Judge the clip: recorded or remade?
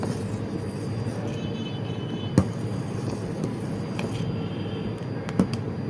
recorded